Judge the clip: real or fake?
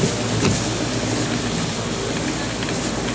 real